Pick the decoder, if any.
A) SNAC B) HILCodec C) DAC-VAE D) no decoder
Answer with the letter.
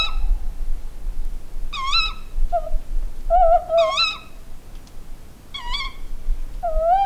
D